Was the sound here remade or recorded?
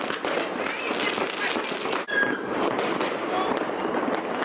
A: recorded